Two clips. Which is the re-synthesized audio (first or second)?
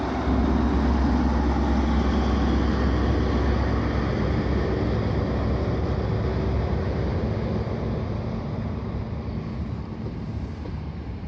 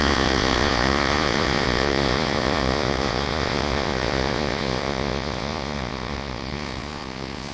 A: second